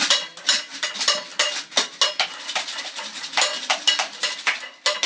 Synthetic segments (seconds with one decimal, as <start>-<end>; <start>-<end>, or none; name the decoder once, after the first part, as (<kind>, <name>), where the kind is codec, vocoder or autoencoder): none